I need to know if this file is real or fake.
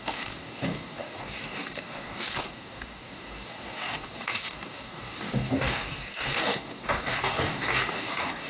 fake